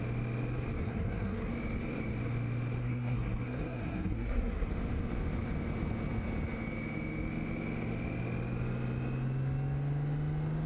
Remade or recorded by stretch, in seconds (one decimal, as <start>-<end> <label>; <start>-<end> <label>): 0.0-0.8 recorded; 0.8-1.5 remade; 1.5-2.8 recorded; 2.8-4.7 remade; 4.7-10.7 recorded